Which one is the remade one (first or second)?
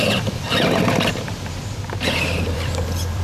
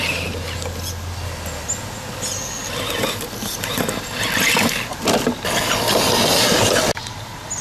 first